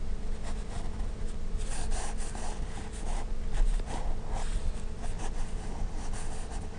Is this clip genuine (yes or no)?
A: yes